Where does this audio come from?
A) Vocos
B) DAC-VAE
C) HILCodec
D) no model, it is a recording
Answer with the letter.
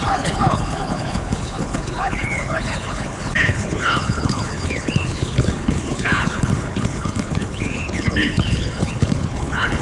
C